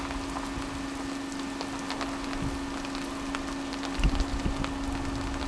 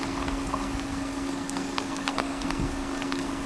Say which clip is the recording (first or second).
first